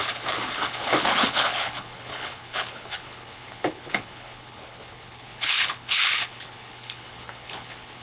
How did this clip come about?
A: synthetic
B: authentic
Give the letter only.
A